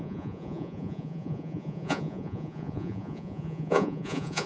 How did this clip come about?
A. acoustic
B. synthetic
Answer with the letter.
B